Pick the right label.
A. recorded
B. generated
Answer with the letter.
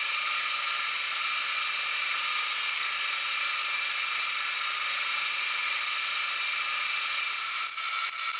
A